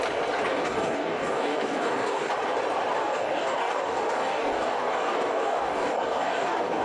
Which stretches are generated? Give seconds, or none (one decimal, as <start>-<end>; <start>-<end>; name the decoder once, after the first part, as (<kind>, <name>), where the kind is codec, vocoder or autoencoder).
0.5-2.3 (codec, DAC); 3.0-6.8